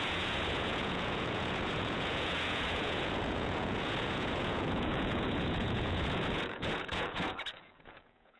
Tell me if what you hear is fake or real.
fake